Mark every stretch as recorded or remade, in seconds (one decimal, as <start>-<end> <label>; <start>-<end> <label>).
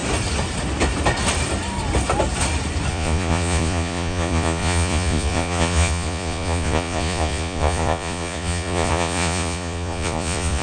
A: 0.0-2.9 recorded; 2.9-10.6 remade